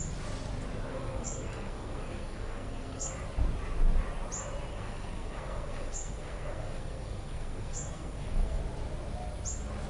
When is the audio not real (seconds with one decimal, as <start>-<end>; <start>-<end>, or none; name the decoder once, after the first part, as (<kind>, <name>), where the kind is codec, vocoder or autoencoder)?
0.9-3.1 (codec, SNAC); 4.7-8.6